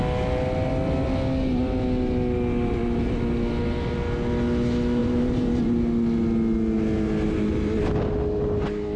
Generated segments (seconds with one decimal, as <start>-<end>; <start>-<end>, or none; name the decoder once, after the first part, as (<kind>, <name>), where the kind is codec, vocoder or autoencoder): 5.0-5.6 (vocoder, BigVGAN v2)